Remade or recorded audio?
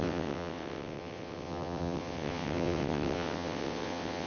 remade